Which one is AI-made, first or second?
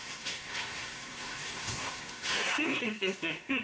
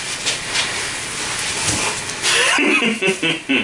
first